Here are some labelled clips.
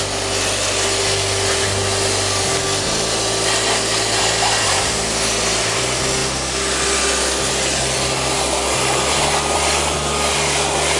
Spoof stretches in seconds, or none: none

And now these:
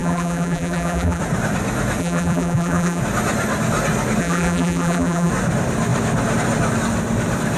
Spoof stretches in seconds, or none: 0.0-1.2 (vocoder, BigVGAN v2); 2.0-3.0; 4.2-5.3

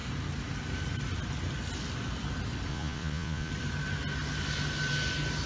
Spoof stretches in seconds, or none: 2.7-3.5 (vocoder, Vocos)

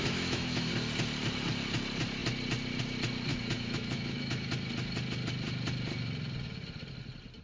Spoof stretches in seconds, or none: 0.0-0.7 (autoencoder, DAC-VAE); 3.3-4.5